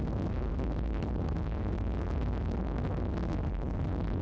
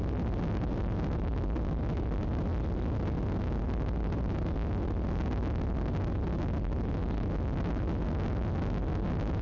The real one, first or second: second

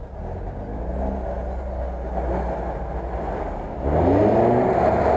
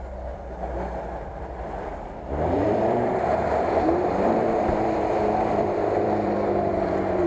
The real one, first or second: first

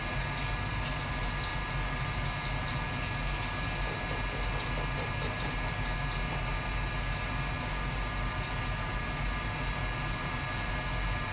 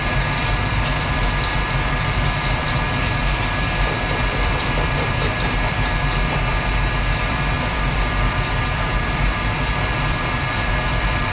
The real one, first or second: first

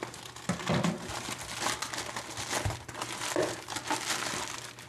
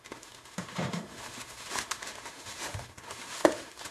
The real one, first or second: first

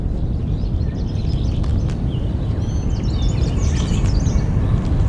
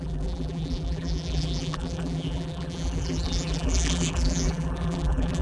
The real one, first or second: first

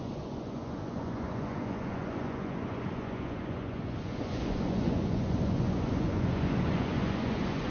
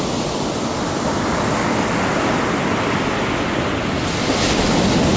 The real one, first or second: second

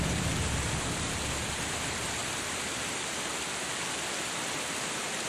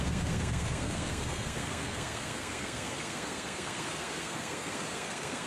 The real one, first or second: first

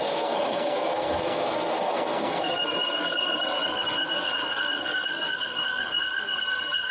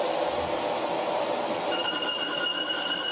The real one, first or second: second